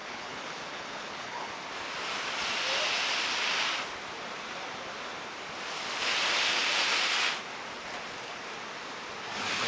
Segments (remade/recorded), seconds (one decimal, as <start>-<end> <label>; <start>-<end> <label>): 0.0-1.5 remade; 1.5-9.7 recorded